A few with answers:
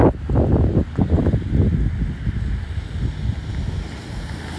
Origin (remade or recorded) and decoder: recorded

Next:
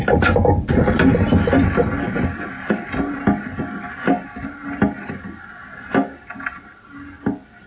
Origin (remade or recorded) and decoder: recorded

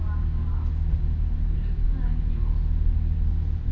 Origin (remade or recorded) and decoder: recorded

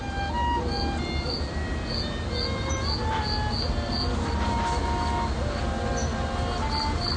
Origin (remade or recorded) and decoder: recorded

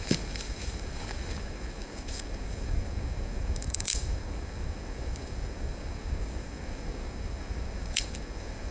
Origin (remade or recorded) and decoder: remade, codec, DAC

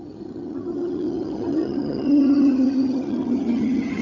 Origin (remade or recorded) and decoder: remade, vocoder, HiFi-GAN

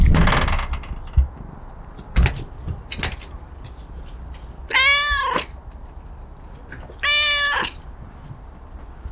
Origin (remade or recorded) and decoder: recorded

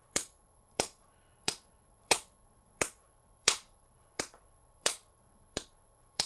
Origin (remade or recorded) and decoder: remade, vocoder, Vocos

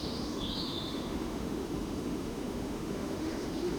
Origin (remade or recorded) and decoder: remade, autoencoder, DAC-VAE